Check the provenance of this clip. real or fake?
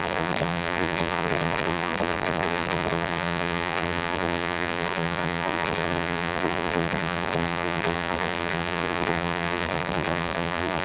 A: fake